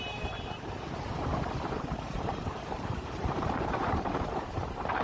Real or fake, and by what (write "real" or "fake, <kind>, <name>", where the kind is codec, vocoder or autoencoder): fake, vocoder, BigVGAN v2